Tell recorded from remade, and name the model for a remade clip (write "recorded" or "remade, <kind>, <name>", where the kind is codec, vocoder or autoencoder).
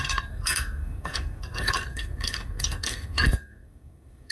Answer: remade, codec, SNAC